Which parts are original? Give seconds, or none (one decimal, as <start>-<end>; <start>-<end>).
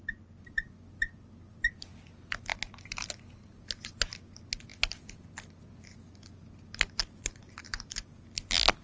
0.0-2.5; 3.1-8.8